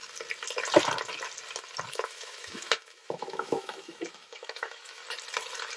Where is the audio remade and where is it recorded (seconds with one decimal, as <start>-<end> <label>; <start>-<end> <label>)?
0.0-1.9 recorded; 1.9-5.0 remade; 5.0-5.8 recorded